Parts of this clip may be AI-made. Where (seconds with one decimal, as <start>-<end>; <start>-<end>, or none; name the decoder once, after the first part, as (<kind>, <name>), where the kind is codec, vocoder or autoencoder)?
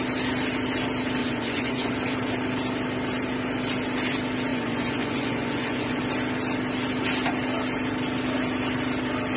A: 1.2-1.9 (vocoder, Vocos); 4.5-6.0